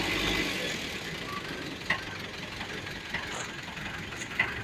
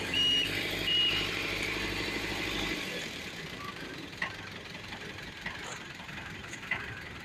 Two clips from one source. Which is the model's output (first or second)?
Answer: second